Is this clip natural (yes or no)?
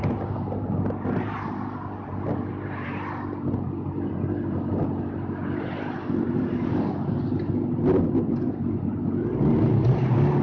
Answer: yes